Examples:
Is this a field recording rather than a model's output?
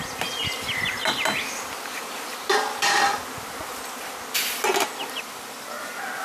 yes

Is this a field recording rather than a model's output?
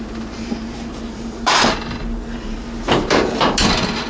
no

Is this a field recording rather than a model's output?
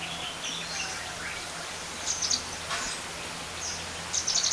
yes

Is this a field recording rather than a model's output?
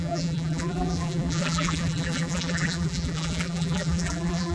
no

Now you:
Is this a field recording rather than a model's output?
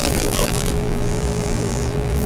no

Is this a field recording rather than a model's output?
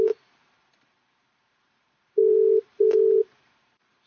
no